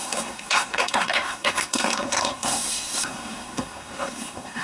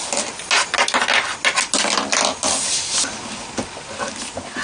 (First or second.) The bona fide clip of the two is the second